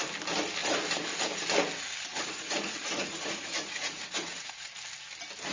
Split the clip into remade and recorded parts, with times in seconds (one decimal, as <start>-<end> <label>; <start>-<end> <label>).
0.0-2.1 recorded; 2.1-4.7 remade; 4.7-5.5 recorded